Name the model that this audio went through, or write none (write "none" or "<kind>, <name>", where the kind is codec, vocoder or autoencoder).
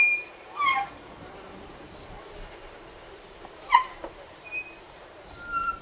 vocoder, BigVGAN v2